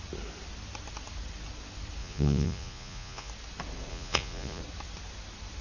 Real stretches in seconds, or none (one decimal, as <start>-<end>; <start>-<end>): 0.0-2.0; 3.3-3.9; 4.6-5.6